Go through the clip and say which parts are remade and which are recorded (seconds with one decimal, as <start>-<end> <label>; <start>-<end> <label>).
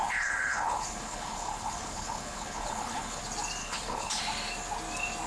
0.0-3.2 remade; 3.2-3.6 recorded; 3.6-4.2 remade; 4.2-5.3 recorded